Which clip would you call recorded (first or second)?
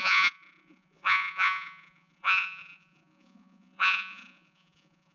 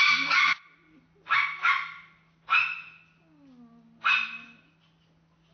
second